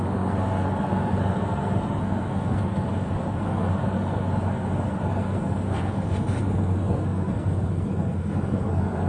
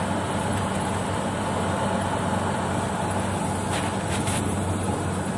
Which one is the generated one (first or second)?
first